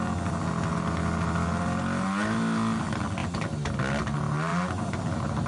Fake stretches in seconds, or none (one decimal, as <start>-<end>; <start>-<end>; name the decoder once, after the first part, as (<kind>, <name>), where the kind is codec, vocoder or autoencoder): 4.5-5.5 (vocoder, BigVGAN v2)